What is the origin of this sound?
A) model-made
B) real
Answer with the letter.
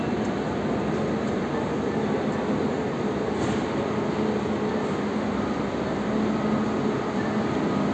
B